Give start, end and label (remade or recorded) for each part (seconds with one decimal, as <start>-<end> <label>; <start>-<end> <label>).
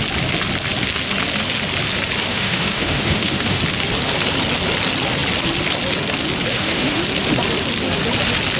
0.0-2.3 recorded; 2.3-3.6 remade; 3.6-6.5 recorded; 6.5-7.0 remade; 7.0-8.6 recorded